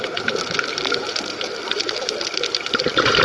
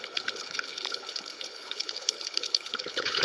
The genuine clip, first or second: first